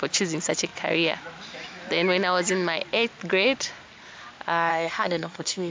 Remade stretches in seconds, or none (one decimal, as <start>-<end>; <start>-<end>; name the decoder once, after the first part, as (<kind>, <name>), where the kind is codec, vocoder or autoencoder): 4.7-5.7 (codec, SNAC)